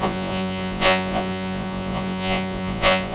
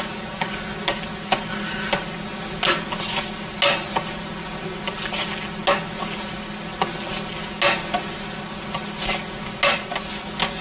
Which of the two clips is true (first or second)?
second